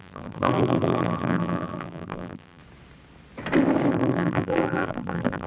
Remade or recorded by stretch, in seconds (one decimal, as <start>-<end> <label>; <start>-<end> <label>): 0.0-2.6 remade; 2.6-3.9 recorded; 3.9-5.5 remade